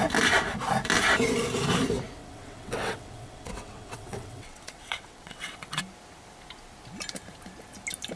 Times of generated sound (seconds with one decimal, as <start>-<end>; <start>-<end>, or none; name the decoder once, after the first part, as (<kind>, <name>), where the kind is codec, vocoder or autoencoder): 2.2-5.8 (vocoder, WaveNeXt)